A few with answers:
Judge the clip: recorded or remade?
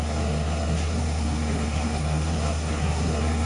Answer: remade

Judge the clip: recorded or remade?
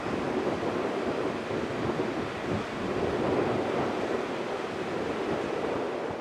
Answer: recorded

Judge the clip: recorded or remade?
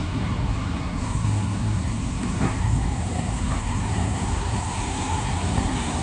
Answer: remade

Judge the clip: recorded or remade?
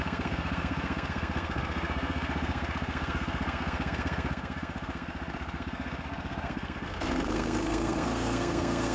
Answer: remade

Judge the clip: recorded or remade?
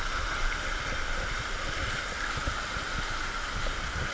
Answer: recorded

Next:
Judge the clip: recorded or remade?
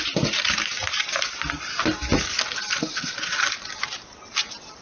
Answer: recorded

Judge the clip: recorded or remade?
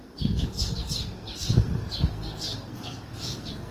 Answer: remade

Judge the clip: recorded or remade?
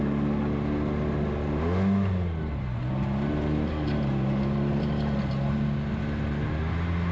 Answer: recorded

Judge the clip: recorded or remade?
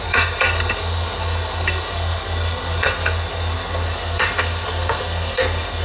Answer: remade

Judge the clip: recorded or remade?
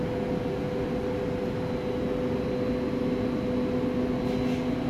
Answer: recorded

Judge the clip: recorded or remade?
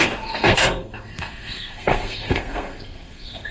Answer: remade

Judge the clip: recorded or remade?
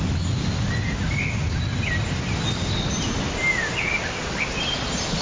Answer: recorded